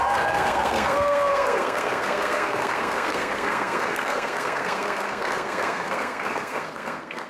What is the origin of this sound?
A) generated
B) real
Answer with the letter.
A